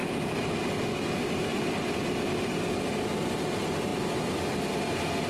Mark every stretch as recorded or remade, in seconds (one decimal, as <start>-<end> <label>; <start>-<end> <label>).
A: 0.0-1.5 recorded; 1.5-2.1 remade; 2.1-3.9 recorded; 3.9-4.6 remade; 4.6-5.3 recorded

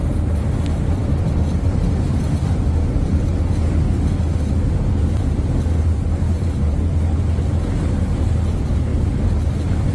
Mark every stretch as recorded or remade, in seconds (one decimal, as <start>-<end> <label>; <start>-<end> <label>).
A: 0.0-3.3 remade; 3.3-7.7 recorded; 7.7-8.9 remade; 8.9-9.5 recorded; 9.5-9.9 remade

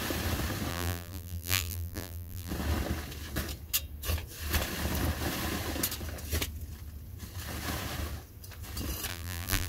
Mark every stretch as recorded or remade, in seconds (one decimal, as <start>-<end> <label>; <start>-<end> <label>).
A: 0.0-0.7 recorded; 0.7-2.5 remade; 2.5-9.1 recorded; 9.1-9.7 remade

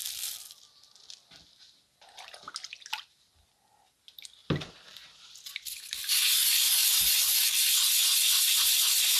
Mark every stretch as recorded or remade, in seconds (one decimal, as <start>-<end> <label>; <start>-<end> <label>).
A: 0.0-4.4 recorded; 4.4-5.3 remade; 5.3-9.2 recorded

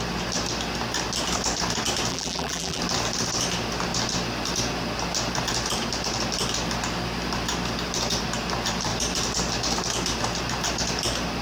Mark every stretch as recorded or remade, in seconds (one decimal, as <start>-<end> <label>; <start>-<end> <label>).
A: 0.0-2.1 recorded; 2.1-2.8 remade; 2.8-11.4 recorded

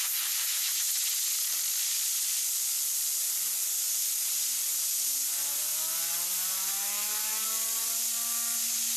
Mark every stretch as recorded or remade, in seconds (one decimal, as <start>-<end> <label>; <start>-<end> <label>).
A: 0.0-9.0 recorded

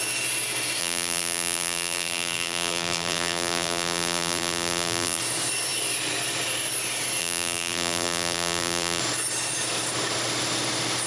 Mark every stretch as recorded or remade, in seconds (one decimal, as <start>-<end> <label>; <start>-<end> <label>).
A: 0.0-0.8 recorded; 0.8-5.2 remade; 5.2-7.2 recorded; 7.2-9.0 remade; 9.0-11.1 recorded